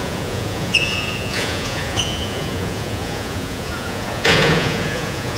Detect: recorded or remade remade